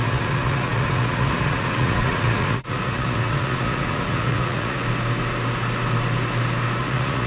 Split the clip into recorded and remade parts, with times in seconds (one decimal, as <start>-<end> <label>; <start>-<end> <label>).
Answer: 0.0-4.8 remade; 4.8-6.8 recorded; 6.8-7.3 remade